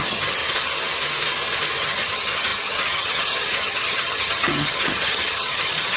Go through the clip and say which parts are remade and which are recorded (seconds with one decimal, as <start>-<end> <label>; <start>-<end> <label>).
0.0-0.4 remade; 0.4-1.8 recorded; 1.8-6.0 remade